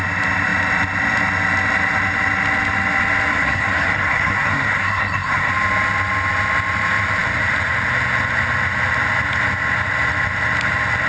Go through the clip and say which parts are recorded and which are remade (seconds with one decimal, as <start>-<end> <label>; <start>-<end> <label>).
0.0-3.3 recorded; 3.3-5.5 remade; 5.5-11.1 recorded